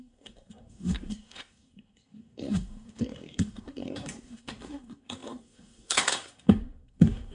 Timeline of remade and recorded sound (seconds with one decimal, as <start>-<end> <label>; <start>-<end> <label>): 0.0-7.3 remade